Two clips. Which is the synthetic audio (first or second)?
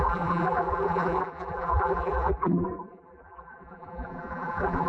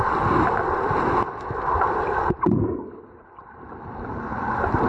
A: first